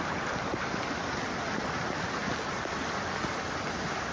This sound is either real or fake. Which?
real